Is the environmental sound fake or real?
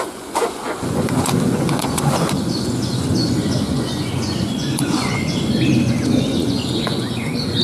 fake